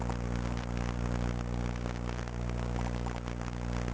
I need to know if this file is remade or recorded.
recorded